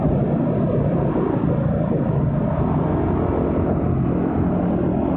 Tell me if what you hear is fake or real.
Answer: real